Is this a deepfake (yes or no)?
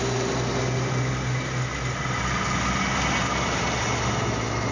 no